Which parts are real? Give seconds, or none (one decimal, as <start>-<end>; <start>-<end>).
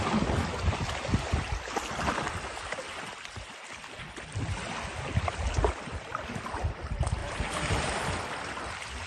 0.0-7.2; 8.1-9.1